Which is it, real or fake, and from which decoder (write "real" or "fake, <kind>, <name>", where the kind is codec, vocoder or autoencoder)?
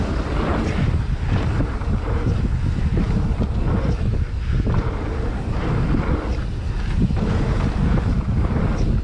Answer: real